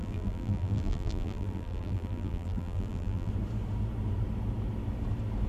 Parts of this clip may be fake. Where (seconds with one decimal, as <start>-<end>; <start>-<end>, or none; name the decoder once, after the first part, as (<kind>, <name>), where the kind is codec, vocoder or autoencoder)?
0.0-3.3 (vocoder, BigVGAN v2)